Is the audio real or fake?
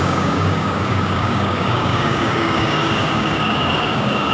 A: fake